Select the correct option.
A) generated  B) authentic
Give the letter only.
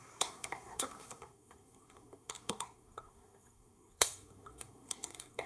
A